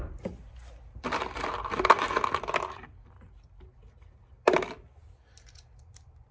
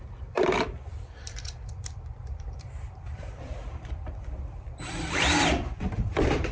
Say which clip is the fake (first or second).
second